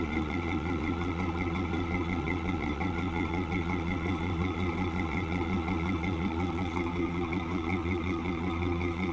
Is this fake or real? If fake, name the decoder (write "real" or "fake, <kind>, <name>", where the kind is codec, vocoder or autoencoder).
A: fake, vocoder, Vocos